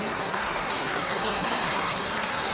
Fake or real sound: fake